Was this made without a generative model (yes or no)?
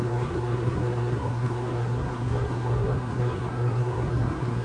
no